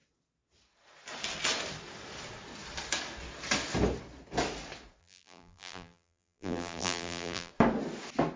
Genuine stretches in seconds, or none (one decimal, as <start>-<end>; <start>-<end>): 0.0-5.0; 7.5-8.4